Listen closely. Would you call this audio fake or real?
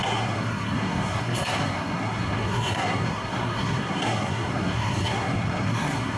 fake